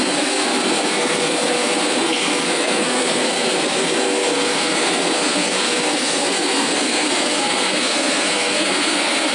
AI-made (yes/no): yes